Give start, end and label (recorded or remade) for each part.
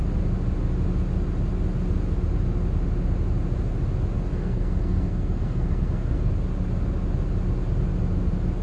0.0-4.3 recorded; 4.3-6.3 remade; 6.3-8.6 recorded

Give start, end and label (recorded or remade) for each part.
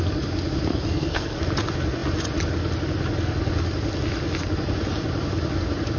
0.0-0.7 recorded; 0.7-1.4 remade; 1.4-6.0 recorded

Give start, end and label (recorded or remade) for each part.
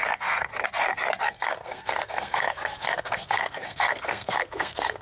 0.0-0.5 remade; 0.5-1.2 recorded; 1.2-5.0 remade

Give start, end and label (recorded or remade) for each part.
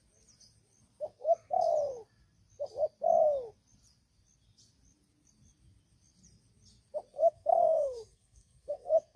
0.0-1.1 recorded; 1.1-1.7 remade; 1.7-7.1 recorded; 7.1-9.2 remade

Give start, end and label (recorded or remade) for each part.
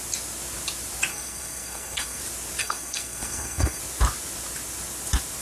0.0-1.1 recorded; 1.1-2.2 remade; 2.2-2.6 recorded; 2.6-3.8 remade; 3.8-5.4 recorded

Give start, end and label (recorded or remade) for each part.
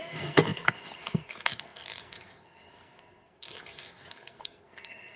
0.0-5.2 remade